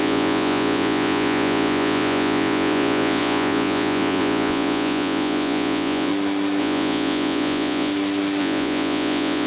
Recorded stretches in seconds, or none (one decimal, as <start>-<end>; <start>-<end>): 6.1-6.6; 7.9-8.4